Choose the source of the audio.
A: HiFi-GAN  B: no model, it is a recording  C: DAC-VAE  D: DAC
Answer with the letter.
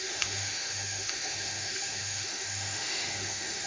C